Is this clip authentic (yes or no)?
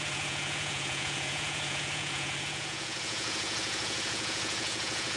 no